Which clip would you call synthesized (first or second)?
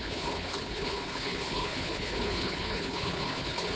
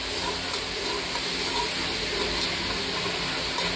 first